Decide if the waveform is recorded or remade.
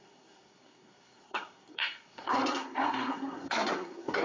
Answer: remade